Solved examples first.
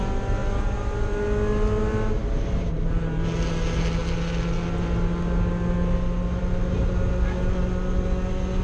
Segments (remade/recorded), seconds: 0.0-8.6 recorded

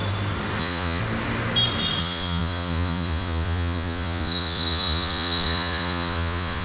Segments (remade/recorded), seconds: 0.0-0.6 recorded; 0.6-1.0 remade; 1.0-2.0 recorded; 2.0-6.6 remade

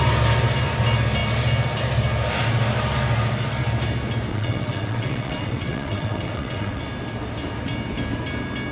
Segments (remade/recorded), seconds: 0.0-4.3 recorded; 4.3-6.8 remade; 6.8-8.7 recorded

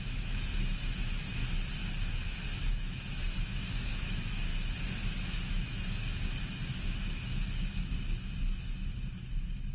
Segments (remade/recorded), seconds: 0.0-1.4 remade; 1.4-2.2 recorded; 2.2-9.7 remade

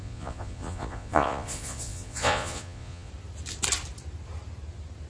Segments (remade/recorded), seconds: 0.0-3.1 remade; 3.1-5.1 recorded